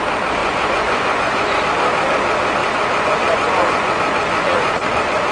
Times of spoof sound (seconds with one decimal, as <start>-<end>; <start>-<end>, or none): 0.4-1.6; 2.6-5.3